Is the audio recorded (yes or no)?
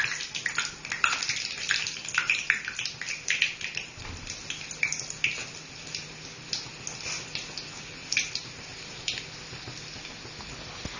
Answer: yes